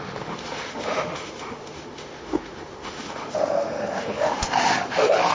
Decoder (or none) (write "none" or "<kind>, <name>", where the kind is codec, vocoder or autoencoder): autoencoder, DAC-VAE